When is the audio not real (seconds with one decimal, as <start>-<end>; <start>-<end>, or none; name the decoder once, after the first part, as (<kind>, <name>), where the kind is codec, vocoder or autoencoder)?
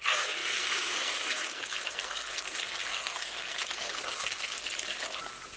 0.0-4.6 (codec, SNAC)